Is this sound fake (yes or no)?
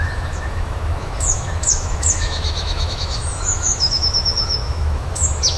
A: yes